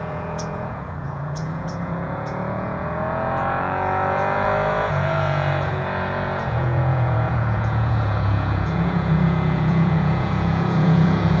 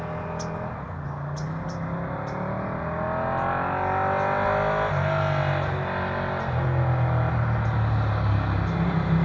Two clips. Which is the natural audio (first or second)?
second